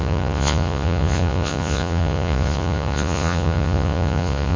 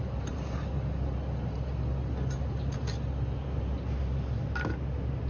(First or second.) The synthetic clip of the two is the first